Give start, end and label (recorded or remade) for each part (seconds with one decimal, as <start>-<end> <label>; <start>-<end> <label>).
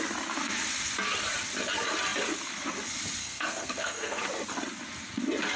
0.0-3.2 recorded; 3.2-4.2 remade; 4.2-5.6 recorded